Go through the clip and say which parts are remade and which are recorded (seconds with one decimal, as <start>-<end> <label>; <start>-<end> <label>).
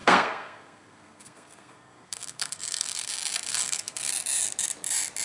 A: 0.0-3.1 remade; 3.1-3.5 recorded; 3.5-4.1 remade; 4.1-5.2 recorded